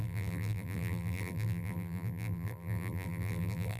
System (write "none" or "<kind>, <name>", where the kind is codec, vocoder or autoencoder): vocoder, BigVGAN v2